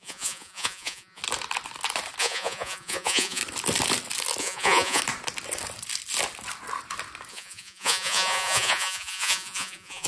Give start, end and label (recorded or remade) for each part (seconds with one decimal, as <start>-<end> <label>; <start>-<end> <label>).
0.0-1.2 remade; 1.2-2.2 recorded; 2.2-3.4 remade; 3.4-4.4 recorded; 4.4-5.0 remade; 5.0-7.3 recorded; 7.3-10.1 remade